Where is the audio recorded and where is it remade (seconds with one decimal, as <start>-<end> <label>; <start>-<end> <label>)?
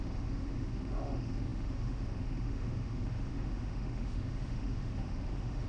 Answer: 0.0-5.7 remade